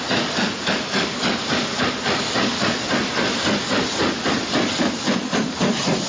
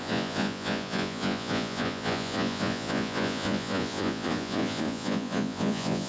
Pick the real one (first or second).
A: first